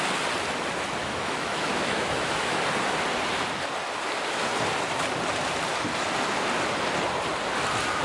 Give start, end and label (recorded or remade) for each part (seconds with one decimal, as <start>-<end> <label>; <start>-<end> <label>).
0.0-1.0 recorded; 1.0-2.6 remade; 2.6-8.0 recorded